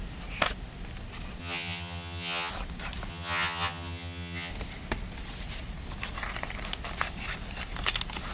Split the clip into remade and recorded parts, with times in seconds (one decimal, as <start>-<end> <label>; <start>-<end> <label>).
0.0-1.4 recorded; 1.4-2.5 remade; 2.5-3.1 recorded; 3.1-4.5 remade; 4.5-8.3 recorded